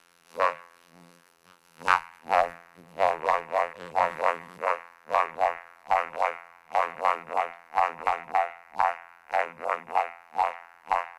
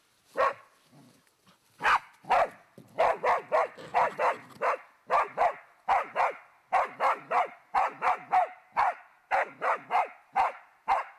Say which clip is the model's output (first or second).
first